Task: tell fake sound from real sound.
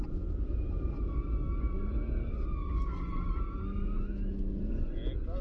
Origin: real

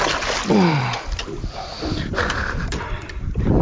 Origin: real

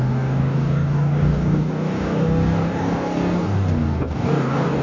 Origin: fake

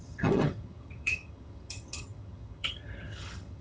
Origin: fake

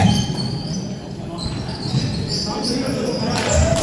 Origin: real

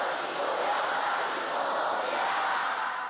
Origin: real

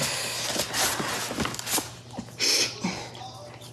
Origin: real